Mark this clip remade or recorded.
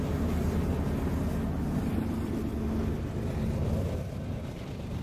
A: recorded